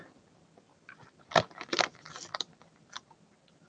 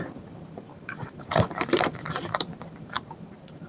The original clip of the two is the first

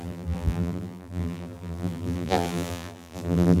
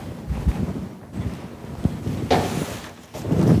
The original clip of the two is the second